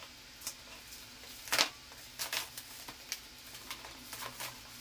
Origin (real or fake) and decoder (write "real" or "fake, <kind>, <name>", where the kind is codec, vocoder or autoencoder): real